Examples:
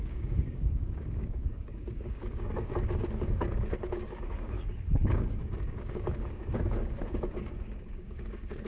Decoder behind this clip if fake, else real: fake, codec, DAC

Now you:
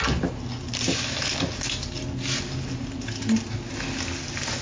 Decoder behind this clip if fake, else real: real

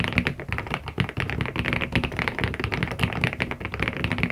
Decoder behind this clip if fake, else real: real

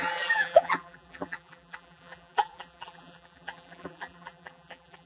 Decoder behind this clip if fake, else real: fake, vocoder, BigVGAN v2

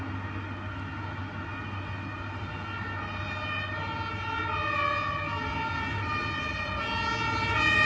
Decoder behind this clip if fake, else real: real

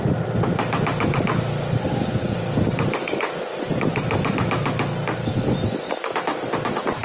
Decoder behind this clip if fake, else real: real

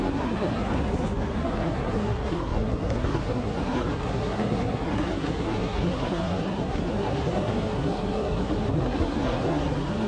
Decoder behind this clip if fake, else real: fake, codec, SNAC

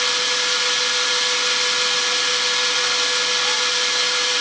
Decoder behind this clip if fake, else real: real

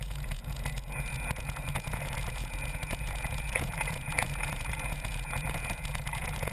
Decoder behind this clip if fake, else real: fake, vocoder, Vocos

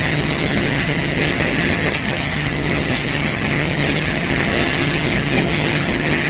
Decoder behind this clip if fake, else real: fake, vocoder, HiFi-GAN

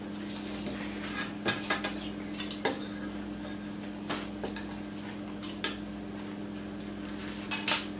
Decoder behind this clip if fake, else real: real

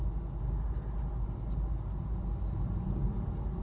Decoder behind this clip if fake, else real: real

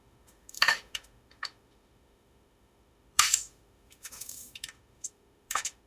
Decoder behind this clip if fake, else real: fake, autoencoder, DAC-VAE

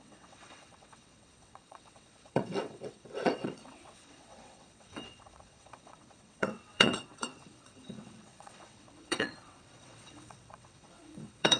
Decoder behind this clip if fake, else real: fake, vocoder, WaveNeXt